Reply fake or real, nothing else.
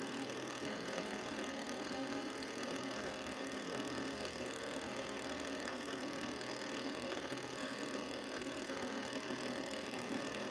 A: fake